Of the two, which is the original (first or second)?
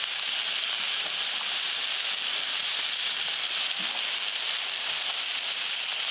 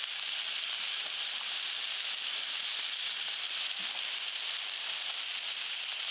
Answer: first